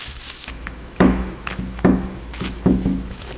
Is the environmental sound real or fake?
fake